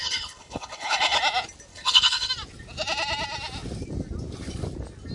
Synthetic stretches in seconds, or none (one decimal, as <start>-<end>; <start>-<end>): 0.0-1.2; 1.7-2.3

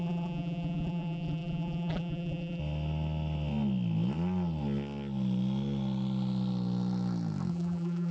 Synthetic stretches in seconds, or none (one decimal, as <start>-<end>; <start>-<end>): 0.0-2.6; 7.5-8.1

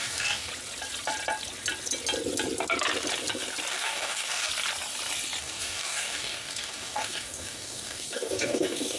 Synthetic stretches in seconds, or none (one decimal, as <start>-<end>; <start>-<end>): 0.0-0.5; 3.7-4.5; 5.4-9.0

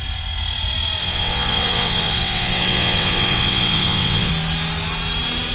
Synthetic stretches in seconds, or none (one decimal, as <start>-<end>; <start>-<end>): 1.0-4.3